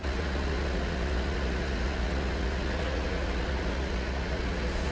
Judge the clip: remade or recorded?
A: remade